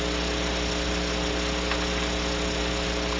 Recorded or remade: recorded